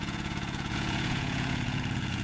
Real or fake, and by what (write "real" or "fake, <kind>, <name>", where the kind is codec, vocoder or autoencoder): fake, vocoder, Vocos